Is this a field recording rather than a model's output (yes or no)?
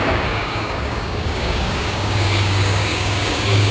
no